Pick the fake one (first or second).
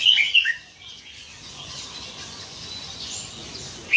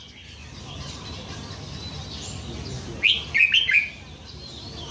first